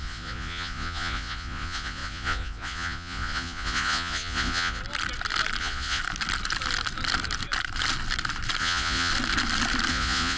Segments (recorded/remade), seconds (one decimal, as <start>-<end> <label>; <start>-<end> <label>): 0.0-4.8 remade; 4.8-5.6 recorded; 5.6-6.0 remade; 6.0-8.6 recorded; 8.6-9.1 remade; 9.1-9.9 recorded; 9.9-10.4 remade